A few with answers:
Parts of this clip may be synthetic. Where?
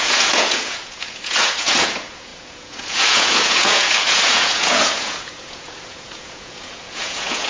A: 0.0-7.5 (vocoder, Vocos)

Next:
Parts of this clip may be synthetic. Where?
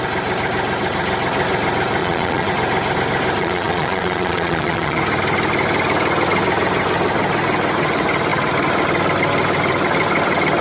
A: 2.0-2.5 (vocoder, Vocos); 3.4-5.0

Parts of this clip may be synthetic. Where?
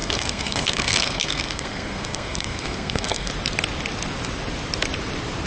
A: 0.0-3.3 (codec, SNAC)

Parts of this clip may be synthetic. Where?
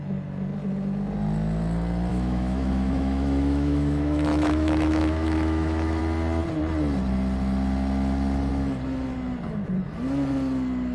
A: 2.1-6.0 (autoencoder, DAC-VAE)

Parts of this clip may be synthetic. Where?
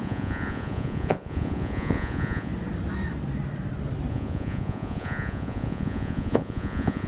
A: 0.0-2.5 (vocoder, Vocos); 4.1-7.1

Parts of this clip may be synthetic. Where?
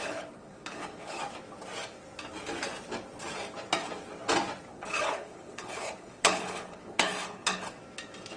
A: 0.0-1.2 (codec, HILCodec); 4.7-7.8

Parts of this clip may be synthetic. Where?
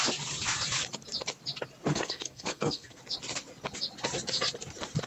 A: 1.9-3.0 (codec, SNAC)